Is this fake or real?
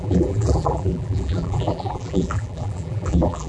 fake